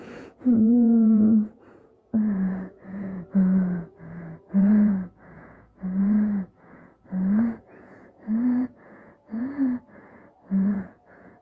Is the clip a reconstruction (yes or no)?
yes